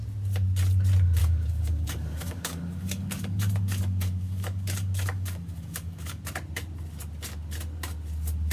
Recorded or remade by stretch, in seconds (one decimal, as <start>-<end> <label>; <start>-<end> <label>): 0.0-1.2 recorded; 1.2-6.2 remade; 6.2-8.5 recorded